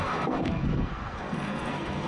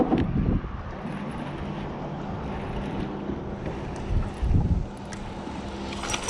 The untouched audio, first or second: second